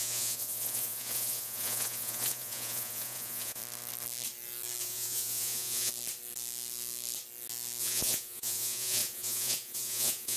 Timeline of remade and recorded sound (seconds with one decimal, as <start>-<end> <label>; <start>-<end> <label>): 0.0-3.6 remade; 3.6-4.8 recorded; 4.8-5.9 remade; 5.9-7.8 recorded; 7.8-10.4 remade